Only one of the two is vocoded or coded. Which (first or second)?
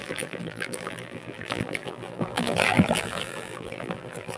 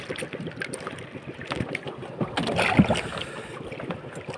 first